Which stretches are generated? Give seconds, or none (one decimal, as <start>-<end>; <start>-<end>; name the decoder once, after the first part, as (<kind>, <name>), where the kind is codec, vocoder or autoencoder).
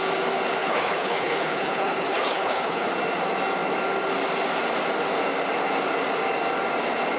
0.6-2.9 (codec, HILCodec)